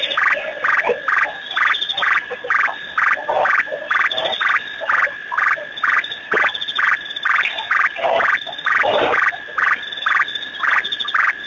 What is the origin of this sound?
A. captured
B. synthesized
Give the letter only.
A